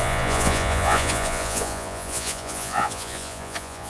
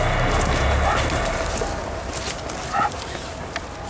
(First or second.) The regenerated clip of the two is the first